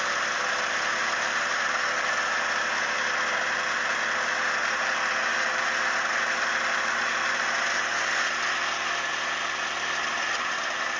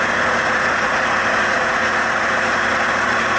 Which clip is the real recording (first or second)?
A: first